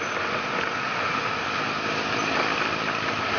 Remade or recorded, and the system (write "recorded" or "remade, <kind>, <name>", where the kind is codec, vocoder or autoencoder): recorded